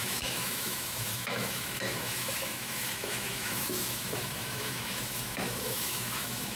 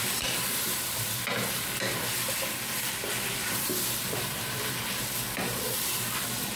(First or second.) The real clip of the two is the second